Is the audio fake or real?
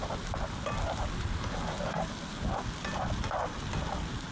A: real